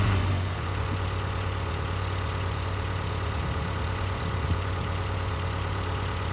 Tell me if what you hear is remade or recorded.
remade